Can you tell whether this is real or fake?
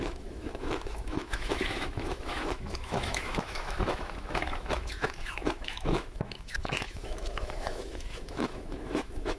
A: fake